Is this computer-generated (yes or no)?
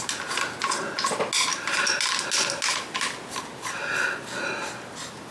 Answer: no